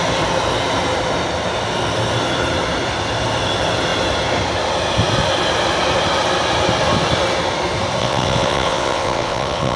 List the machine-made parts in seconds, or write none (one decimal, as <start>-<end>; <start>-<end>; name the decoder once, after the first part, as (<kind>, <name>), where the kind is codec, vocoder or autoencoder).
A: 8.0-9.8 (vocoder, WaveNeXt)